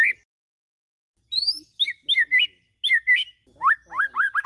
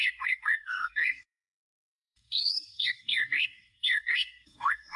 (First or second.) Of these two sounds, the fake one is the second